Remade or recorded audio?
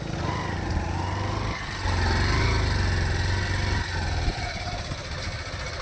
recorded